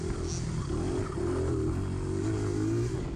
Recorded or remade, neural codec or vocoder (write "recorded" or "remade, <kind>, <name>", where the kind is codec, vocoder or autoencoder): recorded